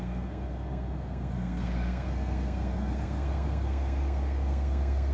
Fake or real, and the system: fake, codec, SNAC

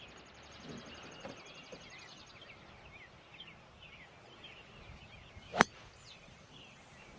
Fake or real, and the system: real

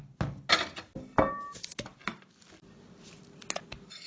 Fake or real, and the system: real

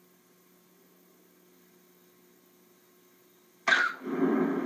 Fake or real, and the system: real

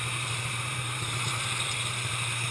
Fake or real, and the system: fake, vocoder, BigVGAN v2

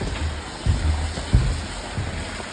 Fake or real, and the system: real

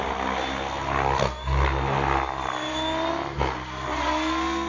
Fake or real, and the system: real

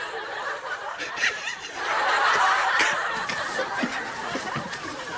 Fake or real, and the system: real